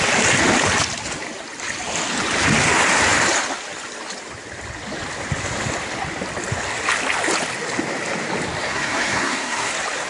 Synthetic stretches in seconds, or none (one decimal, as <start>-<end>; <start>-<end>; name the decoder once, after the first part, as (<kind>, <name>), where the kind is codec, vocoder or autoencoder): 8.6-9.7 (codec, SNAC)